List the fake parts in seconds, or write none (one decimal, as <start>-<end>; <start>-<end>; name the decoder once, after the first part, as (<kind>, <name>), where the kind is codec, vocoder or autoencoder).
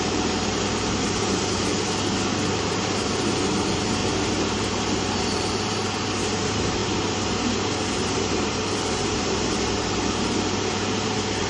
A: 0.0-1.7 (vocoder, BigVGAN v2); 2.5-4.0; 4.6-6.8; 7.9-11.5